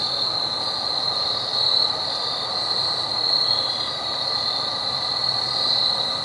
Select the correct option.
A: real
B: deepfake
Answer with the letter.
A